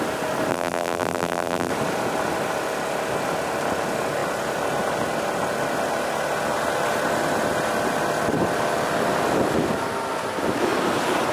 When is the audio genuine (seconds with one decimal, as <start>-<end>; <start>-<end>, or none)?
0.0-0.5; 1.7-11.3